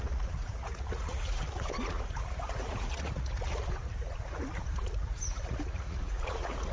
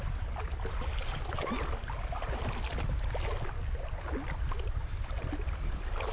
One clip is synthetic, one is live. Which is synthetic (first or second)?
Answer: first